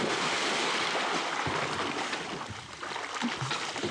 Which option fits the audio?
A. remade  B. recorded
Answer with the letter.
B